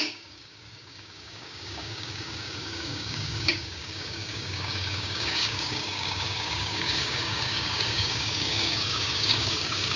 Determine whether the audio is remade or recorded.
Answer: remade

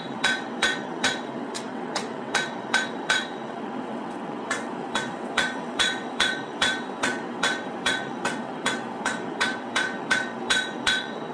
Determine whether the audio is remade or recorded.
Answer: remade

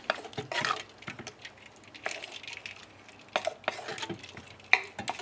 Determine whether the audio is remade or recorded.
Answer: recorded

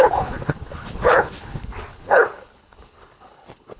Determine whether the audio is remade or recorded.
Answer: remade